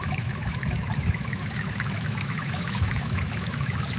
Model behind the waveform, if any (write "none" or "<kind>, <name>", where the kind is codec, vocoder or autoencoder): autoencoder, DAC-VAE